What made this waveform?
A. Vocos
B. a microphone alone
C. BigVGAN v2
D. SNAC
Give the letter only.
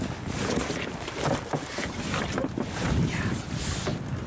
B